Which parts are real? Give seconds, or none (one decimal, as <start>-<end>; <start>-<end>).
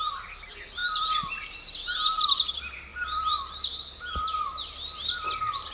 0.0-2.9; 3.6-5.7